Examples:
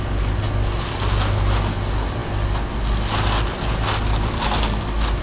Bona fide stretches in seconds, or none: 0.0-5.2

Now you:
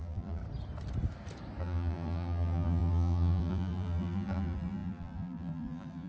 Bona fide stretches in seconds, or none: 0.4-1.6

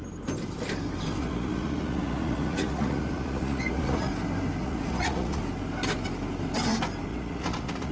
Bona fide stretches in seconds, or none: 0.0-1.2; 4.1-4.6; 5.4-7.1

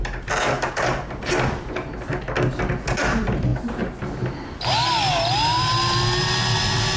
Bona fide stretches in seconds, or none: 0.0-7.0

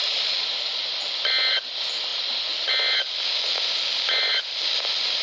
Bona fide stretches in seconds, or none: 0.0-5.2

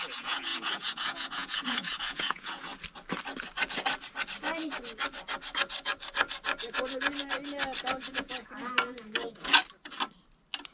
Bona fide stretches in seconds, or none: 2.7-7.9; 9.6-10.7